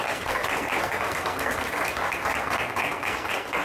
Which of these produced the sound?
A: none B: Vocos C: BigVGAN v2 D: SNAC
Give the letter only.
D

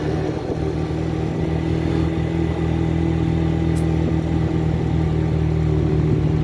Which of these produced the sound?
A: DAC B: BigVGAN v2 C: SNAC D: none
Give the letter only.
D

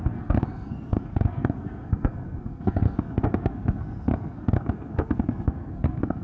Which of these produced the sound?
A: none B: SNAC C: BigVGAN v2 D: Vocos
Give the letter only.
B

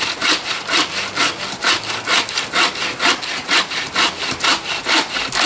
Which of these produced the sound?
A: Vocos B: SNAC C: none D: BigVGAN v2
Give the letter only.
C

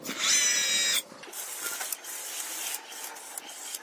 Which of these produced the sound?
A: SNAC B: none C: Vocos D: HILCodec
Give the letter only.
B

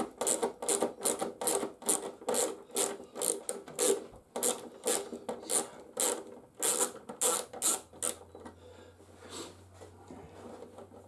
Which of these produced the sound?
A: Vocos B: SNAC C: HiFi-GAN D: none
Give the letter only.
D